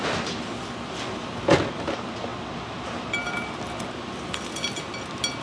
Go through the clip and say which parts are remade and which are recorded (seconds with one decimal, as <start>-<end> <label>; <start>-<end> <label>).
0.0-5.4 recorded